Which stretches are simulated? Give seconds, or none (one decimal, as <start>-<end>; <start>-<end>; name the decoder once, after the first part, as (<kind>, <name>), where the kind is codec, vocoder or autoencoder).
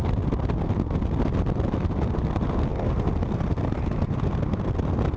none